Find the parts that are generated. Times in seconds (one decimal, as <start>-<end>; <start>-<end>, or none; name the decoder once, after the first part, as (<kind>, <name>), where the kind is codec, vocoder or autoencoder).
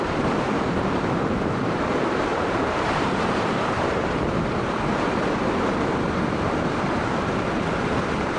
0.0-8.4 (vocoder, BigVGAN v2)